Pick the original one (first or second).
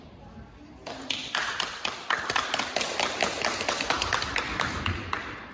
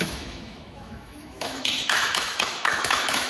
first